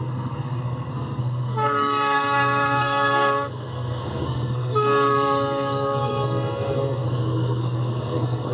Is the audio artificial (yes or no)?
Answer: yes